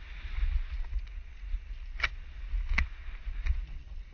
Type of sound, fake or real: real